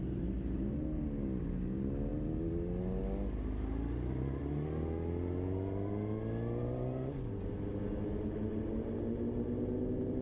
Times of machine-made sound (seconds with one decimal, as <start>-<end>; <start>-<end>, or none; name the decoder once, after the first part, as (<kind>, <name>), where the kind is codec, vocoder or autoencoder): none